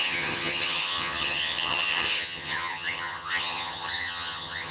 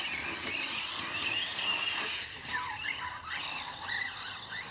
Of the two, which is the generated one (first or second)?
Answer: first